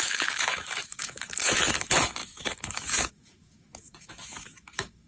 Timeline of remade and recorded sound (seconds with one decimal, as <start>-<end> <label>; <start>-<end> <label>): 0.0-5.1 remade